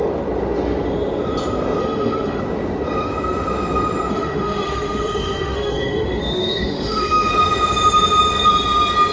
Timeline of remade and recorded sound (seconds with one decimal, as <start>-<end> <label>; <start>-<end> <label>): 0.0-1.8 recorded; 1.8-2.4 remade; 2.4-4.1 recorded; 4.1-7.3 remade; 7.3-9.1 recorded